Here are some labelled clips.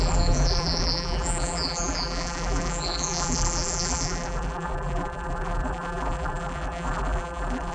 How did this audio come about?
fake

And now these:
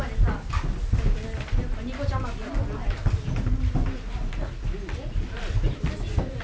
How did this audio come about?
real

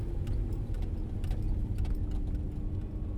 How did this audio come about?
real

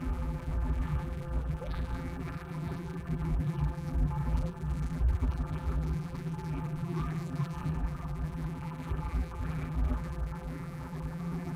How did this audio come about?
fake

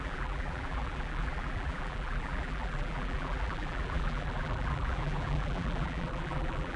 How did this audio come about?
fake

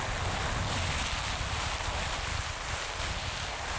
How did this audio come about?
real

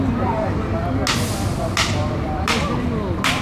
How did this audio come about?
real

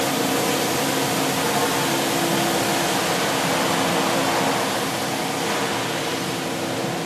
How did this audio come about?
real